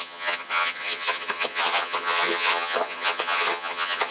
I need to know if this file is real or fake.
fake